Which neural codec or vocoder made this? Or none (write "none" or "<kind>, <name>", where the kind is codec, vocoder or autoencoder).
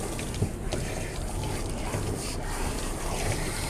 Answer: vocoder, BigVGAN v2